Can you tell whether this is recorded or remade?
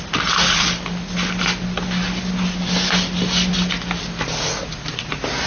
recorded